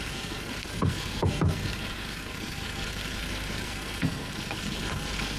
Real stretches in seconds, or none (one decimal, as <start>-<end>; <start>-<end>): none